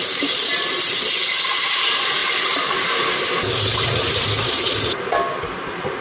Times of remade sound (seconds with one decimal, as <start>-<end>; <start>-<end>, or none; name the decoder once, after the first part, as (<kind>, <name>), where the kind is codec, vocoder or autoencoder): none